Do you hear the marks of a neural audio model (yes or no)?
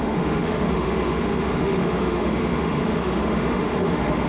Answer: yes